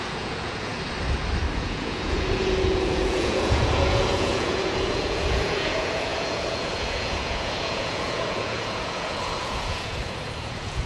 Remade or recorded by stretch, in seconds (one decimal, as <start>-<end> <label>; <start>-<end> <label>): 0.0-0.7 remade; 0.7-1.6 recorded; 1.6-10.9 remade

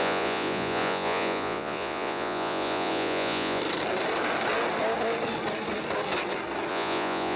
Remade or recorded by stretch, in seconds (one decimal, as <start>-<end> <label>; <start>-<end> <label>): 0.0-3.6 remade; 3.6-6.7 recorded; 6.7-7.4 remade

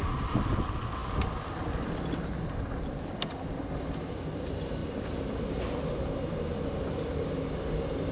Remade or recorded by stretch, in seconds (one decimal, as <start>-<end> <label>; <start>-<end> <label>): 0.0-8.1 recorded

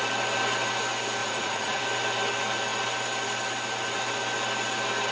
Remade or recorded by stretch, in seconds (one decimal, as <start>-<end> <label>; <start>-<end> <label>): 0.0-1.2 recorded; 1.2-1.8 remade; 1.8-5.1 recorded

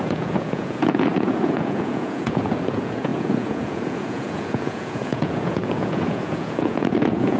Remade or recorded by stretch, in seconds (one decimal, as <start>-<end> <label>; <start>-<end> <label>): 0.0-7.4 remade